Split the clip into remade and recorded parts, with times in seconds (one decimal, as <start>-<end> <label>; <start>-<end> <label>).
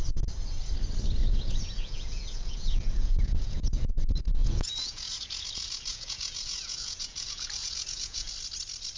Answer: 0.0-1.2 recorded; 1.2-3.9 remade; 3.9-4.4 recorded; 4.4-8.3 remade; 8.3-9.0 recorded